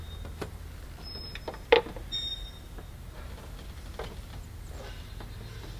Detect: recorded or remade recorded